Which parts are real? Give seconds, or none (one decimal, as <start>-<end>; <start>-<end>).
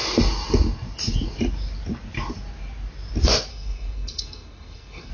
0.0-3.5